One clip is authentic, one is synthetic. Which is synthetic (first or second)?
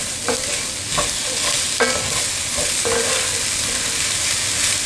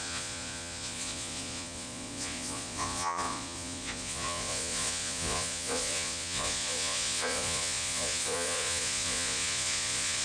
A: second